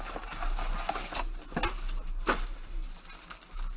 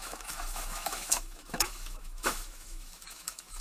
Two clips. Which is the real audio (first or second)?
first